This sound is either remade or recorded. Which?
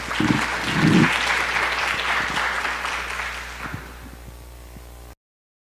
recorded